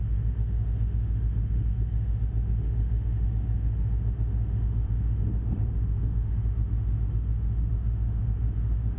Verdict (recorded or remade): remade